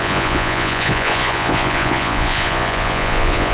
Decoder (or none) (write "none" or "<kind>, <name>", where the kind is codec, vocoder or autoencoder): vocoder, Vocos